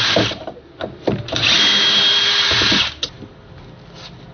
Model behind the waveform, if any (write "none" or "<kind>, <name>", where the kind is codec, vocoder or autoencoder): none